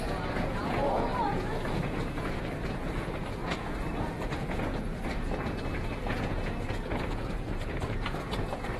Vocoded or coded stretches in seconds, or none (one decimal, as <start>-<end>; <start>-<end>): 0.0-8.8